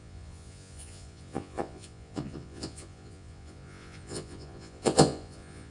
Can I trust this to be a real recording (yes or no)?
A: no